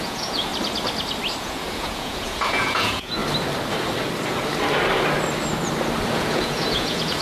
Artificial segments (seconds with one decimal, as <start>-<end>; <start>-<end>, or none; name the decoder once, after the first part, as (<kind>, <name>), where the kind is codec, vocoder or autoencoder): 0.0-0.5 (vocoder, Vocos); 1.4-3.2; 6.1-7.2